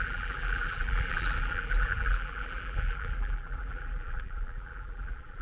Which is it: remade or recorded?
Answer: remade